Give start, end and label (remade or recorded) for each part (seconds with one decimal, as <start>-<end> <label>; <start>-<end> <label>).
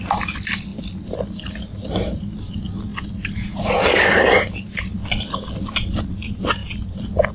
0.0-7.3 recorded